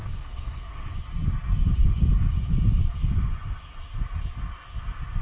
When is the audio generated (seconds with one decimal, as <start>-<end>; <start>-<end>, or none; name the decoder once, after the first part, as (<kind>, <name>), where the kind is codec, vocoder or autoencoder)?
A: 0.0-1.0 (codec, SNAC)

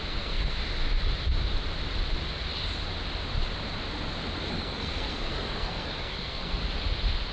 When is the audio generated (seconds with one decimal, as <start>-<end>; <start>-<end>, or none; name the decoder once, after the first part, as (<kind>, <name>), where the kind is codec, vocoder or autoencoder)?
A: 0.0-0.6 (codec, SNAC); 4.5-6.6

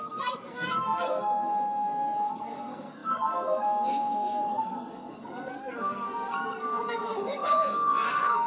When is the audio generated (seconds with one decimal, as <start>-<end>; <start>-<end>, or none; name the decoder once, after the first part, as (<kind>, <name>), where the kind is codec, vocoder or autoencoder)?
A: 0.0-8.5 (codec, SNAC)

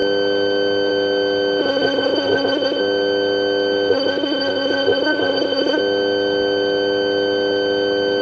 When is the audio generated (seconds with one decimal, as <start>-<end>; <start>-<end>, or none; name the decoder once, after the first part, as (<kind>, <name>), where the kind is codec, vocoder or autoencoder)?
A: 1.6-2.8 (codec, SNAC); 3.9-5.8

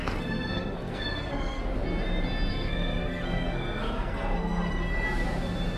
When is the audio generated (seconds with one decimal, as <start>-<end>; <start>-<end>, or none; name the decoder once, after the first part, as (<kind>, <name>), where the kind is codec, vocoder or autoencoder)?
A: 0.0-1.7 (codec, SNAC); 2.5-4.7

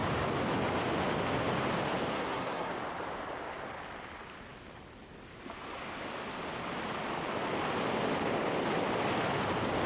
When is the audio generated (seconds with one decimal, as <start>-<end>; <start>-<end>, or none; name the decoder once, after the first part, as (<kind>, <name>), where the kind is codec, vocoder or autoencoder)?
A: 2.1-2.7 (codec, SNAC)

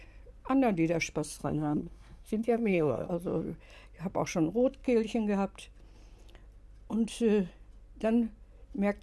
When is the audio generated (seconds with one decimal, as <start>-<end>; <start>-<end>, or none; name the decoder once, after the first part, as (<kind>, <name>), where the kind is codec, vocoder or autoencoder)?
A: 1.4-3.1 (codec, SNAC)

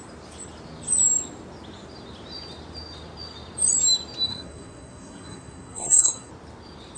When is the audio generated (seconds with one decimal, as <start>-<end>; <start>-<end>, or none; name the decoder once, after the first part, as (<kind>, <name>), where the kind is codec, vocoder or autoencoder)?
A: 4.3-6.3 (codec, SNAC)